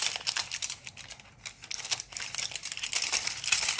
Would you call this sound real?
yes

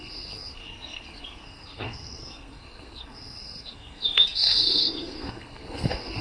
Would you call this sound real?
no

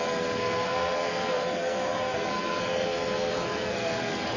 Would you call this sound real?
no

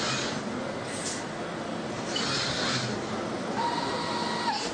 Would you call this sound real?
yes